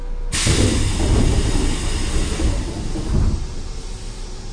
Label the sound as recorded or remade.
recorded